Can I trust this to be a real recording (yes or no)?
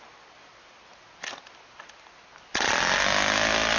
yes